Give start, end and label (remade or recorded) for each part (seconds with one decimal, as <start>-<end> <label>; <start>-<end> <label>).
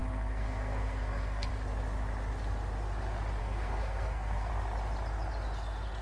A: 0.0-1.5 remade; 1.5-3.4 recorded; 3.4-4.5 remade; 4.5-6.0 recorded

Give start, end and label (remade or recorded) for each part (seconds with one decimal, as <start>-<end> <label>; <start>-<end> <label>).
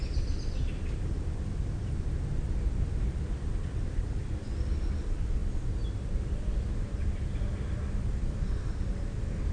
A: 0.0-5.4 remade; 5.4-8.0 recorded; 8.0-9.5 remade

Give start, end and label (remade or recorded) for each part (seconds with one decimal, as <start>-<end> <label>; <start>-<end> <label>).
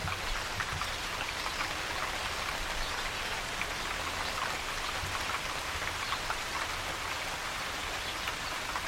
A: 0.0-8.9 recorded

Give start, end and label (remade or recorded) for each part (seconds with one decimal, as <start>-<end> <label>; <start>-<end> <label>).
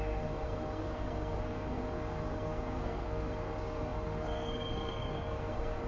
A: 0.0-5.9 remade